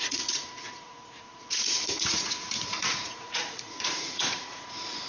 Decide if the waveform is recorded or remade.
remade